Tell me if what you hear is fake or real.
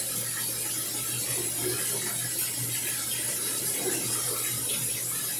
real